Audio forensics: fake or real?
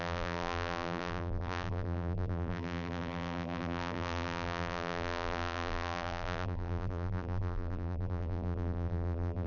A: fake